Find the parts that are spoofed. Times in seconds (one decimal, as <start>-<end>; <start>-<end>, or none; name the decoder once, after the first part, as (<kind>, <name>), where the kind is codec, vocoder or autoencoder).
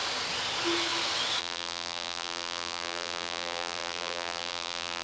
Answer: 1.4-5.0 (vocoder, BigVGAN v2)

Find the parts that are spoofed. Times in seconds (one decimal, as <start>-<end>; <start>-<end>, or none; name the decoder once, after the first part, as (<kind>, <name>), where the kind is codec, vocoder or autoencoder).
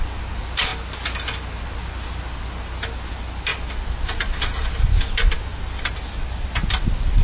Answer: none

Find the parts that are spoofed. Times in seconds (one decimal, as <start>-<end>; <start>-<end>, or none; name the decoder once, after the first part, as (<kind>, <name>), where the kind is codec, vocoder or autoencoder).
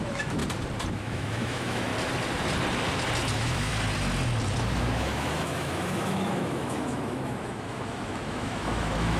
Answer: 0.0-0.4 (autoencoder, DAC-VAE); 0.9-1.9; 3.3-3.7; 4.8-9.2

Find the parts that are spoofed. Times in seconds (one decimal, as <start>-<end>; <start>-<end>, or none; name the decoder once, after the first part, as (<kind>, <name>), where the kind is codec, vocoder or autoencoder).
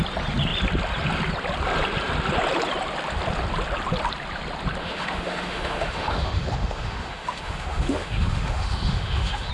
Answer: 4.8-9.5 (autoencoder, DAC-VAE)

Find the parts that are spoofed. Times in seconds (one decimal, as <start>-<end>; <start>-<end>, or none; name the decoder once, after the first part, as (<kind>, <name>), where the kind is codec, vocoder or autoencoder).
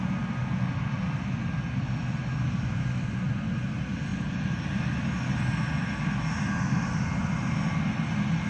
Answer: none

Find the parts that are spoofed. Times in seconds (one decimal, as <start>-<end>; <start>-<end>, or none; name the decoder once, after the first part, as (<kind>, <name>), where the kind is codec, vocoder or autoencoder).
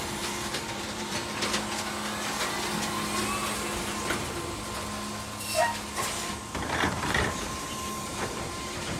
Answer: 0.0-1.2 (vocoder, BigVGAN v2); 6.3-9.0